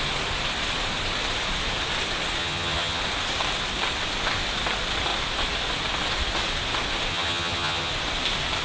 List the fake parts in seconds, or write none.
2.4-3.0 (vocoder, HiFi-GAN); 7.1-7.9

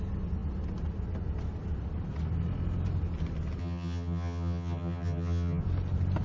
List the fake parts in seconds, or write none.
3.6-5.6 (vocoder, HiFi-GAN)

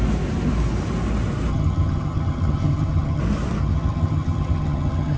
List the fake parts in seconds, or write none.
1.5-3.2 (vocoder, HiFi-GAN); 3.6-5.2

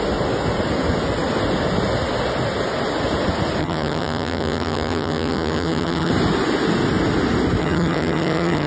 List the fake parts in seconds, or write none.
3.6-6.1 (vocoder, HiFi-GAN); 7.6-8.7